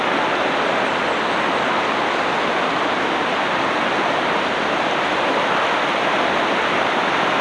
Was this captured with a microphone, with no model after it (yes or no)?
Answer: yes